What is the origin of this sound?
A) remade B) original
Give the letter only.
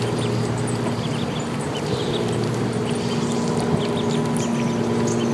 B